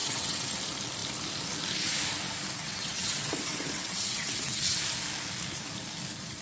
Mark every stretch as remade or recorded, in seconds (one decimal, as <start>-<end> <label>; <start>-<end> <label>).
0.0-0.5 remade; 0.5-2.6 recorded; 2.6-4.7 remade; 4.7-6.4 recorded